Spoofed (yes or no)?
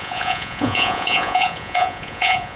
yes